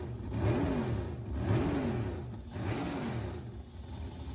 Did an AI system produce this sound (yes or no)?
no